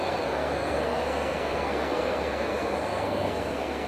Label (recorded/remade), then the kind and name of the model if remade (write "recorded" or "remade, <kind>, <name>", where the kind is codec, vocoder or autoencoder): remade, codec, SNAC